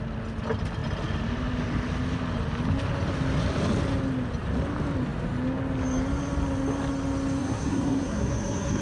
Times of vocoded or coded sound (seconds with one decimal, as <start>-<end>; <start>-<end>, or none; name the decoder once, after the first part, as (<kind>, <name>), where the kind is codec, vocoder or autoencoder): 7.4-8.8 (codec, SNAC)